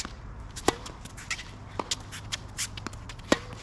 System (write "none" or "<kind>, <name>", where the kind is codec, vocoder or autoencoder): none